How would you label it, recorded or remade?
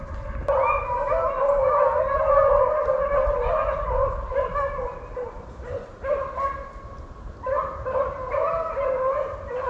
recorded